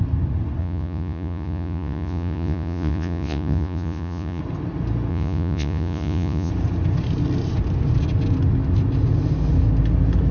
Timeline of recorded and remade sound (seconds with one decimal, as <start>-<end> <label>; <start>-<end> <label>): 0.0-0.6 recorded; 0.6-4.4 remade; 4.4-5.1 recorded; 5.1-6.5 remade; 6.5-10.3 recorded

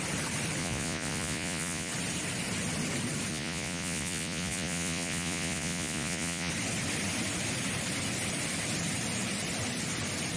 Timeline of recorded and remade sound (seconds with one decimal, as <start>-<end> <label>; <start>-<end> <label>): 0.0-0.6 recorded; 0.6-1.9 remade; 1.9-3.3 recorded; 3.3-6.5 remade; 6.5-10.4 recorded